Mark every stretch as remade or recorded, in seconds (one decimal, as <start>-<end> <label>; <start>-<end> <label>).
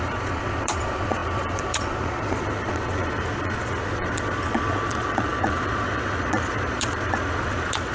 0.0-7.9 remade